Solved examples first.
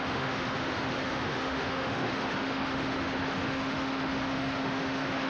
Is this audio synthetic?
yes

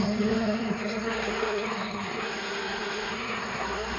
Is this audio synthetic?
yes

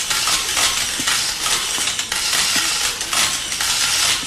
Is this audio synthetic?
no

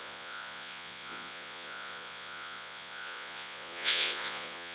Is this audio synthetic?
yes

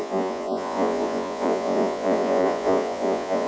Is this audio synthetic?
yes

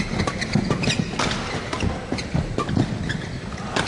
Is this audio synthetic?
no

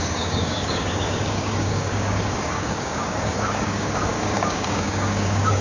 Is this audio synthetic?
yes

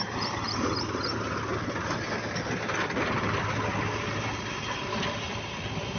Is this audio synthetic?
no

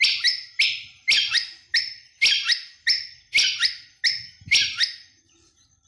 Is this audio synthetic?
no